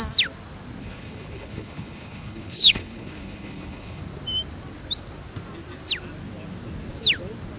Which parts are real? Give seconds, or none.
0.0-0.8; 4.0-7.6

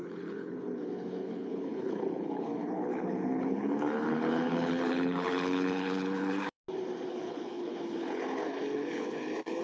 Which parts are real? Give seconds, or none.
6.6-7.1

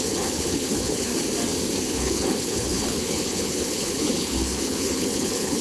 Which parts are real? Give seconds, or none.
1.1-1.9

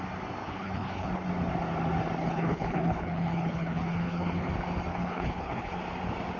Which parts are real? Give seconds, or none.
0.0-0.4; 1.1-2.2; 4.5-4.9; 5.8-6.4